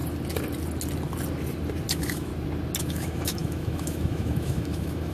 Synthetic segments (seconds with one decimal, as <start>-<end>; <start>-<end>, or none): 1.9-2.3; 2.8-5.1